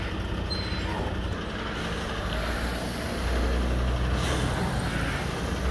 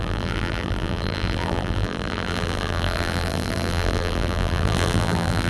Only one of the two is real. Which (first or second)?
first